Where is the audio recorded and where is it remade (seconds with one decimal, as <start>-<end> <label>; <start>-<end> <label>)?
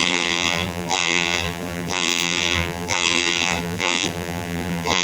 0.0-5.0 remade